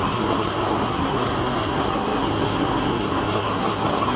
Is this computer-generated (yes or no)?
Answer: yes